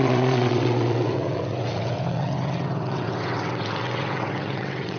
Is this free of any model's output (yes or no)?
no